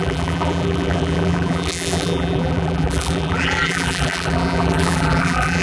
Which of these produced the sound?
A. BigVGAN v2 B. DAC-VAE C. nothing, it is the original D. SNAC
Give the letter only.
A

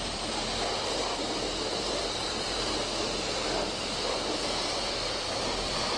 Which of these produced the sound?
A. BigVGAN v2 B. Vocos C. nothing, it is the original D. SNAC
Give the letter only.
A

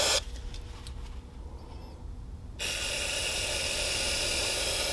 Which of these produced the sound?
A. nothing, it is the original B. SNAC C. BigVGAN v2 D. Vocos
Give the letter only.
A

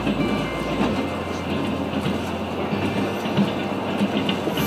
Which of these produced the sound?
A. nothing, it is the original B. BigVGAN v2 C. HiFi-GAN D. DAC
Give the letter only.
A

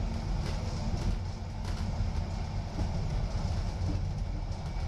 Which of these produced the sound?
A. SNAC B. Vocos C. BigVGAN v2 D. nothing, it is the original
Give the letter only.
D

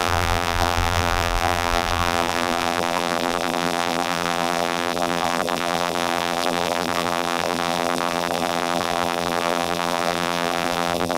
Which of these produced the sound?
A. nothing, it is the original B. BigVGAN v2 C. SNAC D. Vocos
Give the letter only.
B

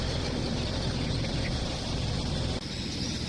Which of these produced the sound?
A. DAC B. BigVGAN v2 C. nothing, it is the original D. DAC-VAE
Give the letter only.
C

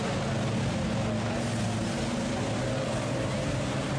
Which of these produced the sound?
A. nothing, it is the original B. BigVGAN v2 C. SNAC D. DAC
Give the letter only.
A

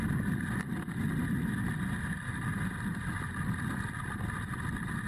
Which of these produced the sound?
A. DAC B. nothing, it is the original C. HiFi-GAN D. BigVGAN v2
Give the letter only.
B